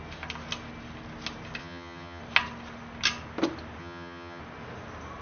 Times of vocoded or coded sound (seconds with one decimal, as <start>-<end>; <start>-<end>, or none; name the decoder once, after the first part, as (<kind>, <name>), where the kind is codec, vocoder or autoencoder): 1.6-2.2 (vocoder, HiFi-GAN); 3.8-4.4